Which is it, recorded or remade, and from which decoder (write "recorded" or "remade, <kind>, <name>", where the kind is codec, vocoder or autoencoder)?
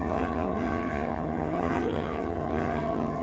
remade, vocoder, HiFi-GAN